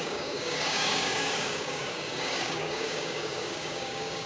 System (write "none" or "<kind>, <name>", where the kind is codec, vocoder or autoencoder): codec, DAC